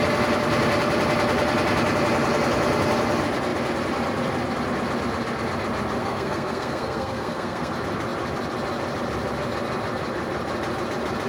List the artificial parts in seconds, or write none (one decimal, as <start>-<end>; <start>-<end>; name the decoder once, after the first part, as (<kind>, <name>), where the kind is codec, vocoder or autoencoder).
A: 6.0-7.7 (codec, SNAC)